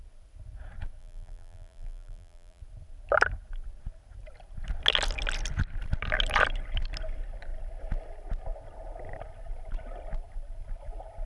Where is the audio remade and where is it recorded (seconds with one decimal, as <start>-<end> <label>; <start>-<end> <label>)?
0.0-1.0 recorded; 1.0-2.6 remade; 2.6-11.3 recorded